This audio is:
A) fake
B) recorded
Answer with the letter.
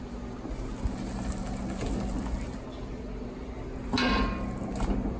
B